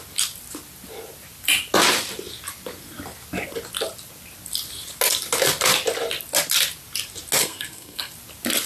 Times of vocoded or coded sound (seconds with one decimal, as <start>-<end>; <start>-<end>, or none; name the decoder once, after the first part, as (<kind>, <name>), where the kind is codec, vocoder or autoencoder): 7.4-8.1 (codec, SNAC)